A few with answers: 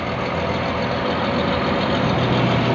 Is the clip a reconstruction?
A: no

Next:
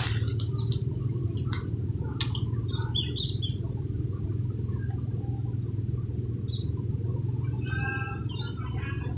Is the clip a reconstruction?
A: no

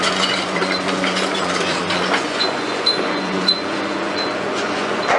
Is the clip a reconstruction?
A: yes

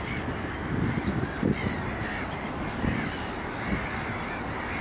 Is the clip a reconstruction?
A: no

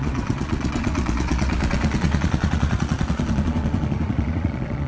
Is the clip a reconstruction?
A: yes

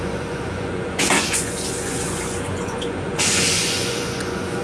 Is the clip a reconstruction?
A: yes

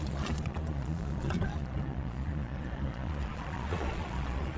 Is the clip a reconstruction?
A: yes